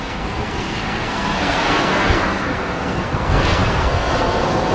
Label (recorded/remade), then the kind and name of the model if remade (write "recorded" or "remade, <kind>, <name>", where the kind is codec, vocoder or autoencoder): remade, codec, SNAC